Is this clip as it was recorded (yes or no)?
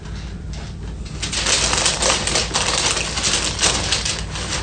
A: yes